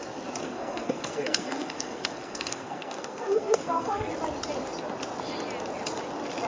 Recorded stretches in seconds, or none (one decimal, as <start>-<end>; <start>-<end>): 0.0-0.4; 4.1-6.5